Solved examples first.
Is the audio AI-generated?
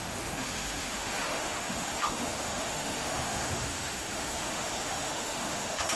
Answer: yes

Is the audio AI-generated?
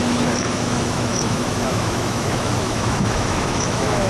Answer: yes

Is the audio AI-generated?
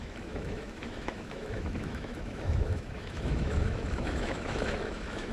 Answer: yes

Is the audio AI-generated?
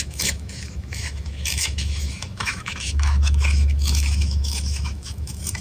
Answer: yes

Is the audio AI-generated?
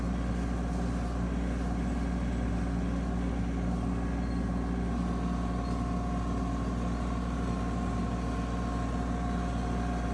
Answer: no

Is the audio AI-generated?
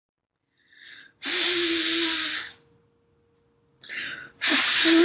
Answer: no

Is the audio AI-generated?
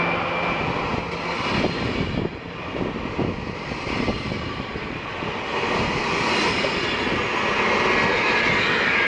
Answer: no